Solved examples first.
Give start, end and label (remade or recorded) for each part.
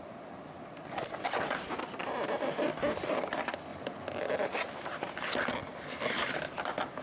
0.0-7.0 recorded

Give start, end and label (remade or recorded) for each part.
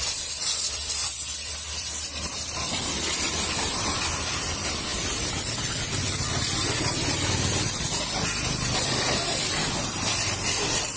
0.0-11.0 remade